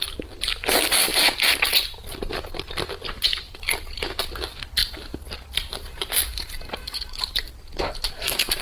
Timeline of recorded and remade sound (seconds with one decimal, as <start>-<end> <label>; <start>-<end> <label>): 0.0-1.1 recorded; 1.1-1.8 remade; 1.8-4.8 recorded; 4.8-7.5 remade; 7.5-8.6 recorded